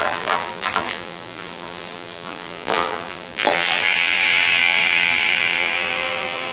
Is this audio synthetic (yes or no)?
yes